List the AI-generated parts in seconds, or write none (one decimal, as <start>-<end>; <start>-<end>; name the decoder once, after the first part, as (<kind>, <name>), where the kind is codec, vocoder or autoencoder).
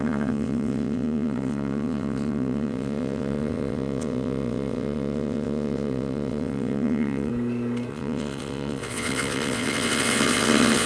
0.0-7.3 (vocoder, WaveNeXt); 7.9-10.9